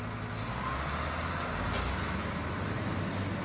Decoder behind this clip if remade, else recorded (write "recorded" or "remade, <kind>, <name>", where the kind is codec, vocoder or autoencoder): recorded